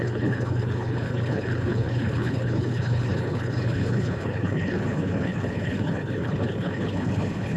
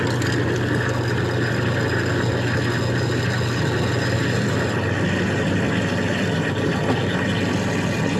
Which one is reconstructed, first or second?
first